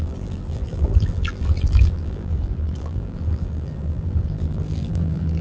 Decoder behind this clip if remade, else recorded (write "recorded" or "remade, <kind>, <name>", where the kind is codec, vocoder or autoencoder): remade, vocoder, BigVGAN v2